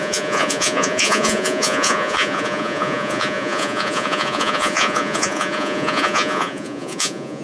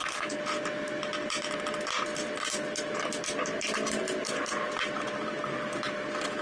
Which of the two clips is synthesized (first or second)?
first